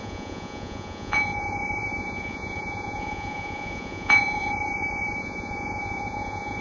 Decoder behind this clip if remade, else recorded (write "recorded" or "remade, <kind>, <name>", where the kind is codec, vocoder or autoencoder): remade, vocoder, Vocos